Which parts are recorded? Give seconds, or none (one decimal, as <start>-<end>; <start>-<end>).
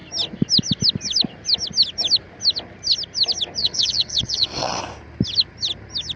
0.0-3.6; 4.8-6.2